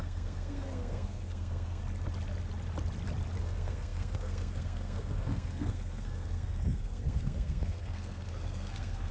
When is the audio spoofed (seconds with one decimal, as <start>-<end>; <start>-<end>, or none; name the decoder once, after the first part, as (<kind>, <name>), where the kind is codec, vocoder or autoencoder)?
0.0-1.8 (codec, SNAC); 3.4-9.1